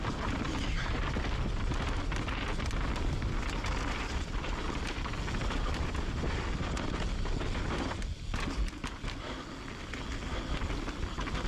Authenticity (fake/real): real